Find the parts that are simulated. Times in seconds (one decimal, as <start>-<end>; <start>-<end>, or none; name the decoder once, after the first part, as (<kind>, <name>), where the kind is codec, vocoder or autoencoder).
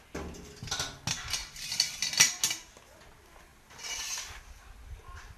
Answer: none